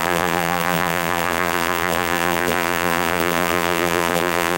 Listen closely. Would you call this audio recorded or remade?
remade